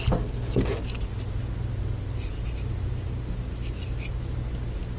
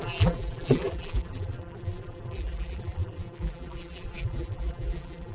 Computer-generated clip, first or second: second